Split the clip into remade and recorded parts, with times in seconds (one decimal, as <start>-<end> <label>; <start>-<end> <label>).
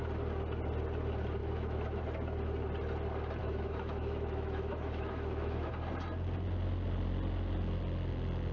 0.0-1.4 recorded; 1.4-2.0 remade; 2.0-3.4 recorded; 3.4-5.7 remade; 5.7-8.5 recorded